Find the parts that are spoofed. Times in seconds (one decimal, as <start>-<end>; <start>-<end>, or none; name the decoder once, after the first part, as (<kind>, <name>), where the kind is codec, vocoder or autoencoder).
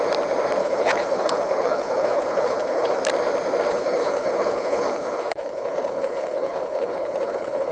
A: 0.6-3.0 (codec, HILCodec); 3.7-7.7